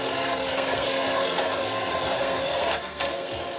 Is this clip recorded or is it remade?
remade